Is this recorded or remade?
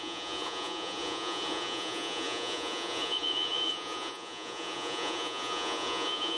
remade